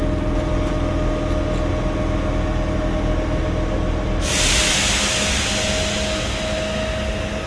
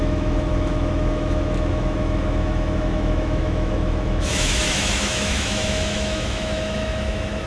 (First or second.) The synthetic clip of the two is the second